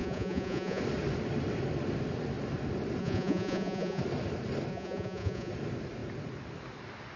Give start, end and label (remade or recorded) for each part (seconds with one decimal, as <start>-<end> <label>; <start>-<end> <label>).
0.0-0.8 remade; 0.8-3.0 recorded; 3.0-4.0 remade; 4.0-4.7 recorded; 4.7-5.5 remade; 5.5-7.2 recorded